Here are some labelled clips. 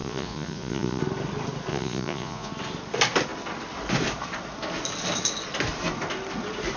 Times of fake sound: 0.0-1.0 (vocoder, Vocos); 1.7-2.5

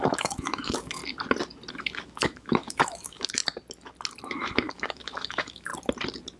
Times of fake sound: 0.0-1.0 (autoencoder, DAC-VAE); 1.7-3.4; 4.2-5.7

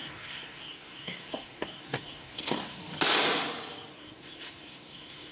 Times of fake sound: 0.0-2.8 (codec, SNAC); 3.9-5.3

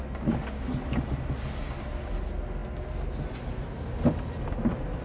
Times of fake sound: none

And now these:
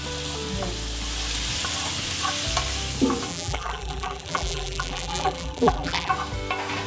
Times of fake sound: 3.3-6.1 (vocoder, BigVGAN v2)

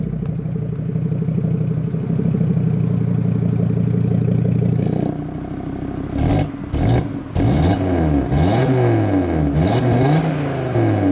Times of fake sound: none